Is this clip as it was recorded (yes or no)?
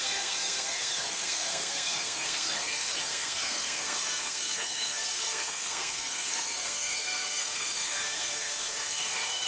no